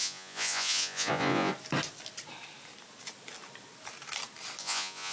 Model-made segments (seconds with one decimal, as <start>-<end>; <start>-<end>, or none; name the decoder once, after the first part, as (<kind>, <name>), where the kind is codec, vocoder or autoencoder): 0.0-1.5 (vocoder, Vocos); 4.6-5.1